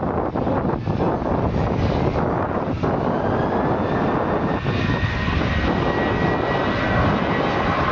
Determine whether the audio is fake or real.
real